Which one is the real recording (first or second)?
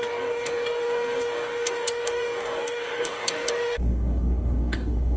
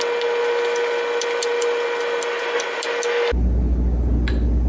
second